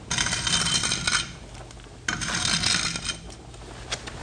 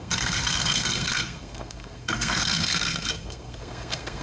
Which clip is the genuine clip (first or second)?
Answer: first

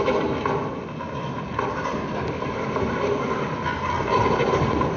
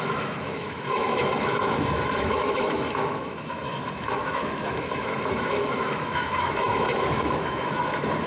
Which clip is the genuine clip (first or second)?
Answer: first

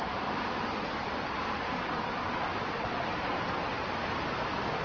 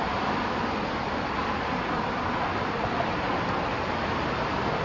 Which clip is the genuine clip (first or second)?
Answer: second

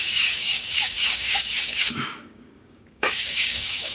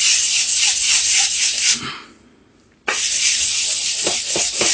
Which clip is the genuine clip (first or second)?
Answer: second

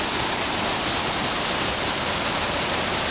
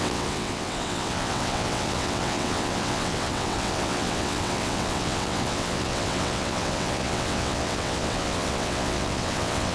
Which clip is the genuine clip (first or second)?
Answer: first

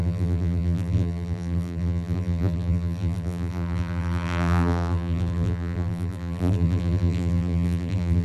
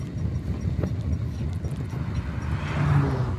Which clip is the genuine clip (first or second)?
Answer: second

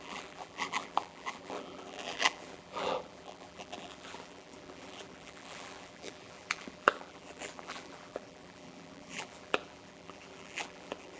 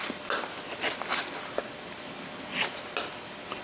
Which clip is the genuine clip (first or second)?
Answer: second